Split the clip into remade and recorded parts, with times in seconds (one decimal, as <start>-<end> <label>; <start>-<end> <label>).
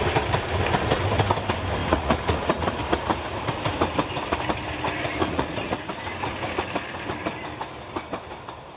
0.0-1.8 recorded; 1.8-2.8 remade; 2.8-5.2 recorded; 5.2-5.9 remade; 5.9-8.8 recorded